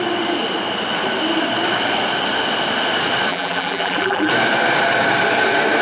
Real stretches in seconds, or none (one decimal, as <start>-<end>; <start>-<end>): 0.0-3.3; 4.3-5.8